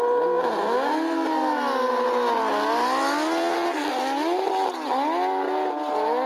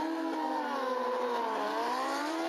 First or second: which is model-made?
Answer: second